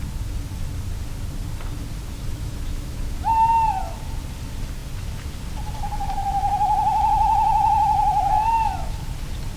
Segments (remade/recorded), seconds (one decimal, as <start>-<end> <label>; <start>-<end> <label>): 0.0-2.3 recorded; 2.3-3.0 remade; 3.0-9.6 recorded